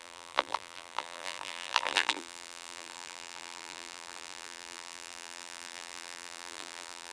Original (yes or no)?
no